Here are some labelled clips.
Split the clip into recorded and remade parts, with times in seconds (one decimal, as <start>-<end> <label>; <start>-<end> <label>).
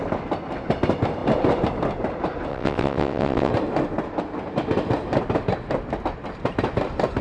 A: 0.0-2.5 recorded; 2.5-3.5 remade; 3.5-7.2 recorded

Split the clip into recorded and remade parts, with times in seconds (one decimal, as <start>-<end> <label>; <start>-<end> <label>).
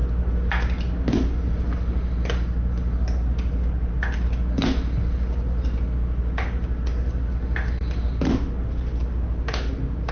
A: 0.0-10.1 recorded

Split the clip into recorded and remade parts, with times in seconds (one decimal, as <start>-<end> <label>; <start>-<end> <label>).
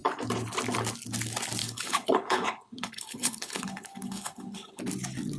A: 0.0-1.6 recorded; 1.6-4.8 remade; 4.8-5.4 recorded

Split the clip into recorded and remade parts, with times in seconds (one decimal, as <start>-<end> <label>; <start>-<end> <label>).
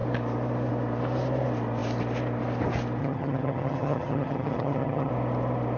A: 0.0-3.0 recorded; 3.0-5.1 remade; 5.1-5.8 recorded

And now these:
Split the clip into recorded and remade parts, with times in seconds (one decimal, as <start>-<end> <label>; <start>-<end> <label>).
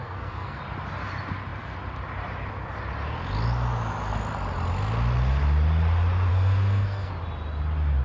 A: 0.0-0.6 remade; 0.6-6.3 recorded; 6.3-7.1 remade; 7.1-8.0 recorded